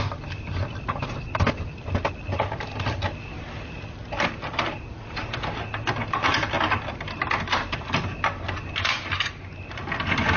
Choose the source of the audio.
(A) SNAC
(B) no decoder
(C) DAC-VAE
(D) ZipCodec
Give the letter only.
B